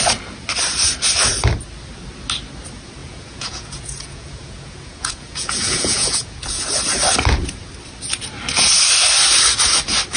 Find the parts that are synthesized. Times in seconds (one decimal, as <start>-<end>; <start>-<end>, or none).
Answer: 3.0-6.6